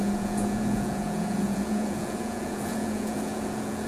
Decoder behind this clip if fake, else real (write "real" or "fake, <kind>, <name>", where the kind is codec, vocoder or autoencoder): fake, vocoder, Vocos